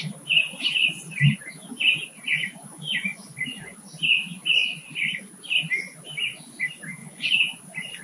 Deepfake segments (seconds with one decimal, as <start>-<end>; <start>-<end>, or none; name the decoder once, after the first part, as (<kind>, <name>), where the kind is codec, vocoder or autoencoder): 0.8-1.5 (vocoder, Vocos); 2.6-3.8; 7.0-7.6